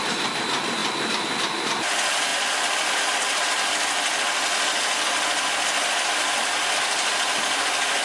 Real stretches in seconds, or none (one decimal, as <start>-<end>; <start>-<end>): 0.0-0.8; 1.6-8.0